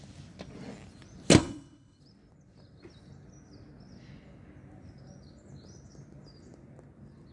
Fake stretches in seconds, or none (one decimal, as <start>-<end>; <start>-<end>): 1.4-2.0